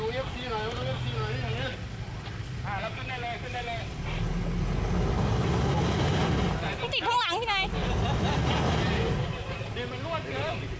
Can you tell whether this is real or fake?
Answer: real